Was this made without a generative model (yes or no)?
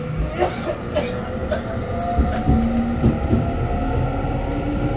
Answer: yes